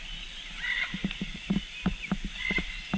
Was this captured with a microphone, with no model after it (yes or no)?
yes